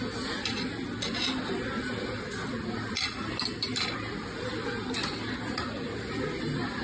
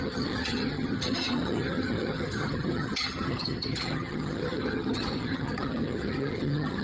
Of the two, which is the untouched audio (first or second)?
first